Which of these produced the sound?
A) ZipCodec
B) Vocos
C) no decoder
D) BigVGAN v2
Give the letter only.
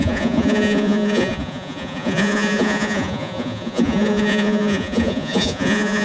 B